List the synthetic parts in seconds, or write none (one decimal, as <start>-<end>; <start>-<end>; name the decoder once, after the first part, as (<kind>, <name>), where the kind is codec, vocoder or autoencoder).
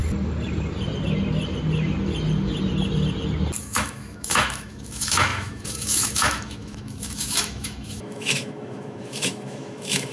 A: 3.6-10.1 (autoencoder, DAC-VAE)